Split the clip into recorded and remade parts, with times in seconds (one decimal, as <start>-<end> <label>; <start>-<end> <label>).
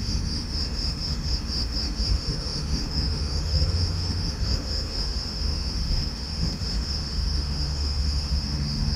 0.0-9.0 remade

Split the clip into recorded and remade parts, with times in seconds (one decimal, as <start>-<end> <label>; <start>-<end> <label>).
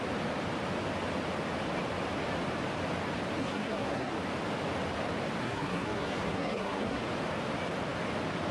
0.0-3.4 recorded; 3.4-4.1 remade; 4.1-5.4 recorded; 5.4-7.0 remade; 7.0-8.5 recorded